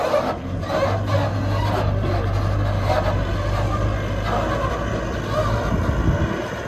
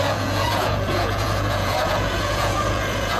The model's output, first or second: second